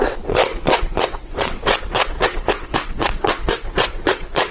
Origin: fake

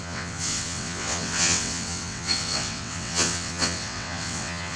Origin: fake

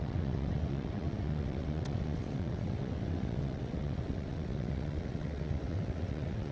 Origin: fake